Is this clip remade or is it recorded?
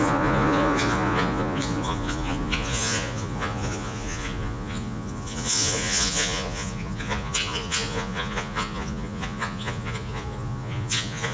remade